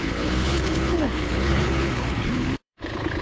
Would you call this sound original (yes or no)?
no